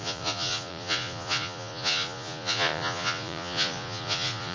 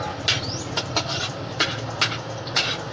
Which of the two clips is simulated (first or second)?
first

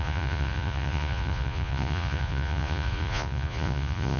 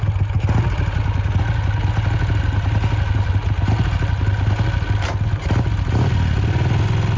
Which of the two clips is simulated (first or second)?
first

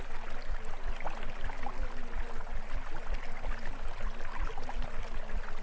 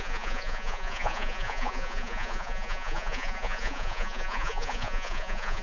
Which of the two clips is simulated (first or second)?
second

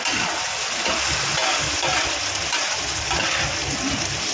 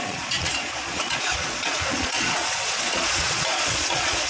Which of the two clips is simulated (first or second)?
second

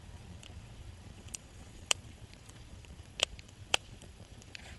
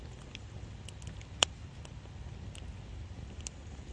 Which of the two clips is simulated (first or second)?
first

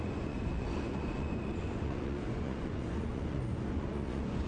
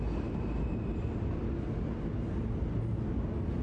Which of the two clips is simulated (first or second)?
first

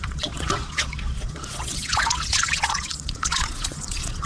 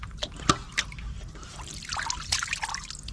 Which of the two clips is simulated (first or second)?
first